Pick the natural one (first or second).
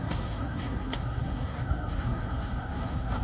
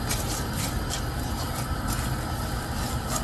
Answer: second